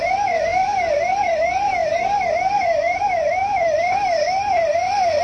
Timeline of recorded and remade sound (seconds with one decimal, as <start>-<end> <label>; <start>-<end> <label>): 0.0-5.2 recorded